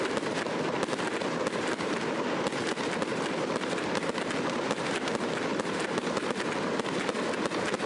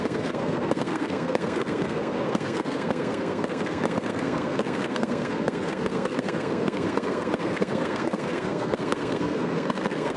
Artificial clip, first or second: second